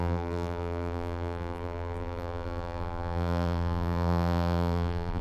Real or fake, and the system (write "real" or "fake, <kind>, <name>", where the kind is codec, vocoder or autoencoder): fake, vocoder, BigVGAN v2